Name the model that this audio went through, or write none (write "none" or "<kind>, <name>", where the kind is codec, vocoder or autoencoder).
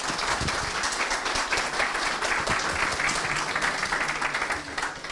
none